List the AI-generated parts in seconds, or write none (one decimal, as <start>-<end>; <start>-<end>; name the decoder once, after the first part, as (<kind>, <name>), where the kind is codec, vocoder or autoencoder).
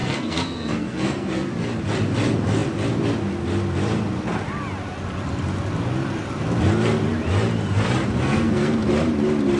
0.0-1.5 (codec, SNAC); 8.2-8.9